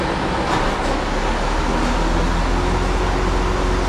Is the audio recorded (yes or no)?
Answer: yes